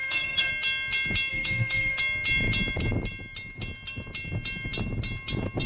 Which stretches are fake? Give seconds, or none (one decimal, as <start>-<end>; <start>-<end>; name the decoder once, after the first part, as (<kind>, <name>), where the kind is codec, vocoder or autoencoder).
0.0-0.5 (codec, SNAC); 1.3-2.0